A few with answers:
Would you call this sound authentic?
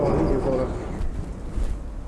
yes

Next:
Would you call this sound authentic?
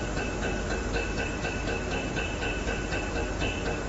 yes